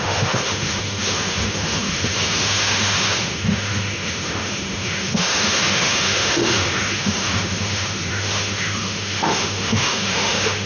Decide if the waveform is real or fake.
fake